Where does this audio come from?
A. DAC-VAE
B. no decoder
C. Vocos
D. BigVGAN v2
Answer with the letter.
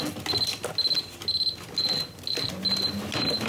B